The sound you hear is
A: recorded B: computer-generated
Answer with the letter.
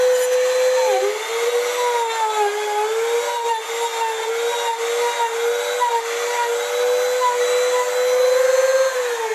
A